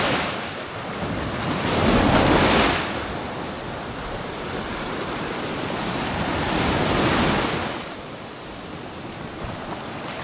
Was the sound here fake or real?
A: real